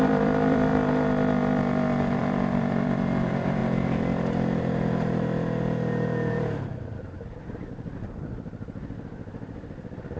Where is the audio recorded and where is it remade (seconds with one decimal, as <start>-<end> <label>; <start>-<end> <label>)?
0.0-0.7 remade; 0.7-2.2 recorded; 2.2-3.6 remade; 3.6-7.7 recorded; 7.7-10.2 remade